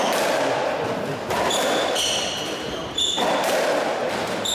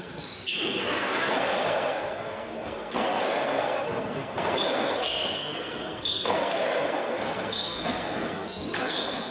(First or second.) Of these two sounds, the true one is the first